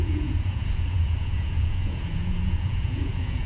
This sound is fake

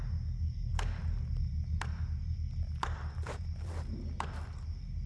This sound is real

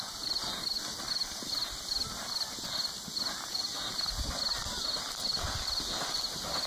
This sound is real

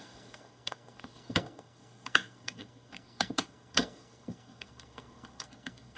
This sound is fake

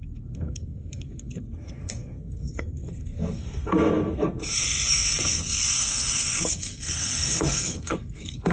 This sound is fake